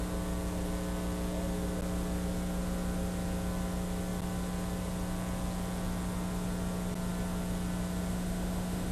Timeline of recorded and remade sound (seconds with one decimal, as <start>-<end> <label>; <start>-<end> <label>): 0.0-8.1 recorded; 8.1-8.9 remade

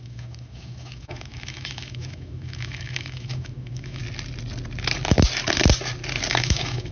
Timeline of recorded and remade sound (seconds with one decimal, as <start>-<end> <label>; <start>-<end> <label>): 0.0-4.0 remade; 4.0-6.3 recorded; 6.3-6.9 remade

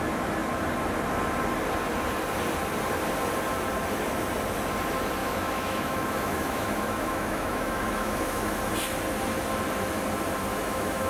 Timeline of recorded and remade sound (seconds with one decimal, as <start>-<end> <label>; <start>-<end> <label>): 0.0-5.2 recorded; 5.2-8.6 remade; 8.6-10.5 recorded; 10.5-11.1 remade

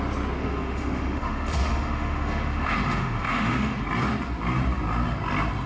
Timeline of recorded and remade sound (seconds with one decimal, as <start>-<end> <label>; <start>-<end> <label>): 0.0-0.4 recorded; 0.4-3.8 remade; 3.8-5.7 recorded

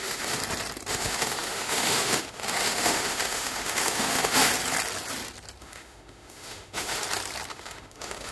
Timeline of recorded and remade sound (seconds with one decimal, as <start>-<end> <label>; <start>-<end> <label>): 0.0-0.4 remade; 0.4-0.9 recorded; 0.9-4.5 remade; 4.5-5.6 recorded; 5.6-7.0 remade; 7.0-7.5 recorded; 7.5-8.3 remade

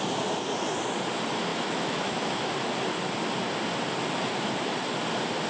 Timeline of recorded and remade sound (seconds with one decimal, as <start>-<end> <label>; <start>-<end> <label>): 0.0-1.5 recorded; 1.5-2.7 remade; 2.7-5.5 recorded

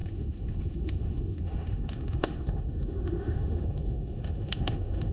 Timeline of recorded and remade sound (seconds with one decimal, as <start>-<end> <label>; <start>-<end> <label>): 0.0-5.1 remade